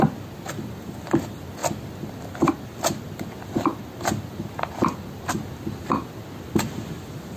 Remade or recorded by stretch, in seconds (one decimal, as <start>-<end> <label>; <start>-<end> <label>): 0.0-7.4 recorded